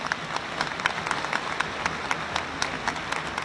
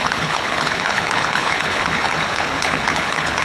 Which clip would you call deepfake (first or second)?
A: second